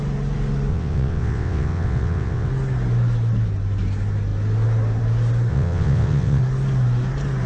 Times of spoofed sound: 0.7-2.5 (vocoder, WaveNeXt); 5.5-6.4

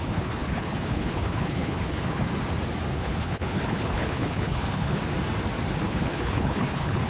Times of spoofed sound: 0.0-2.3 (codec, HILCodec); 2.9-5.0; 5.8-7.1

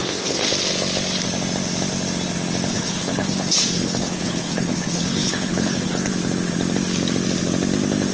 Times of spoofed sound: 0.0-0.5 (codec, HILCodec); 2.7-6.1

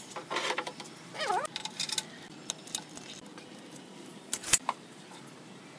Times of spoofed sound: 3.3-5.2 (vocoder, BigVGAN v2)

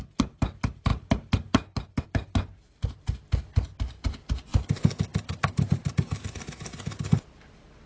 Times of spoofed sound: none